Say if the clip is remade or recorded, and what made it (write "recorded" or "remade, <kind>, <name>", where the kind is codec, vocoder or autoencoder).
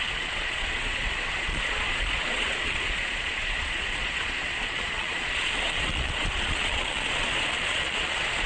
remade, vocoder, Vocos